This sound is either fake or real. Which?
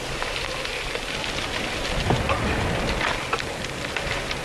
real